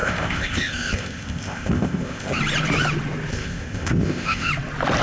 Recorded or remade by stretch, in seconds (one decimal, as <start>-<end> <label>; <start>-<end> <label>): 0.0-2.4 remade; 2.4-3.3 recorded; 3.3-4.5 remade; 4.5-5.0 recorded